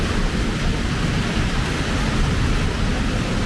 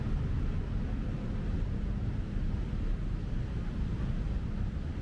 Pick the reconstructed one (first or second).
first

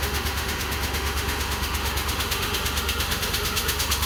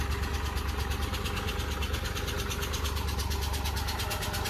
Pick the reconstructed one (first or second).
first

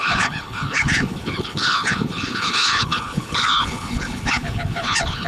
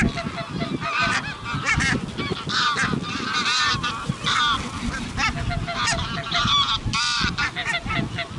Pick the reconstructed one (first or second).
first